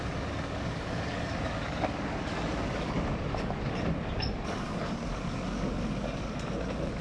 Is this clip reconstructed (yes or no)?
yes